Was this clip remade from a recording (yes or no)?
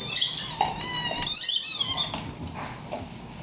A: no